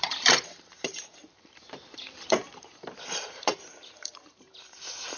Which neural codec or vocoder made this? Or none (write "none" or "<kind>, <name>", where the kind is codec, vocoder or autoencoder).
vocoder, BigVGAN v2